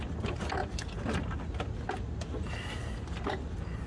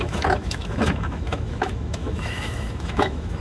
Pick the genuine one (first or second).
first